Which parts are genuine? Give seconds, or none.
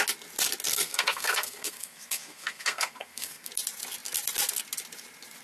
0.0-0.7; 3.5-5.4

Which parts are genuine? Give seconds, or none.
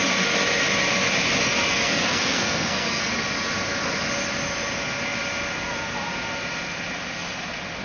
0.0-1.7; 3.1-7.8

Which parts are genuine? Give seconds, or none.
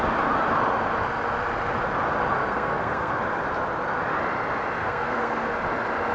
0.0-2.4; 3.2-4.8; 5.5-6.1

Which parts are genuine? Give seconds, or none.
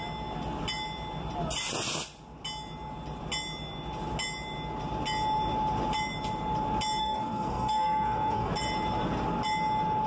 0.0-7.0; 8.5-10.1